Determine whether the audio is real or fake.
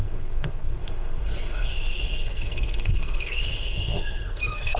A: fake